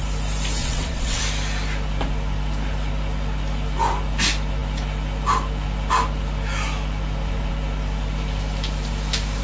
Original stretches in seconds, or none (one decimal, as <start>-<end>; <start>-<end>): 0.0-0.6; 1.2-9.4